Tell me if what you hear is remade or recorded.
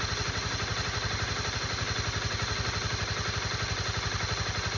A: recorded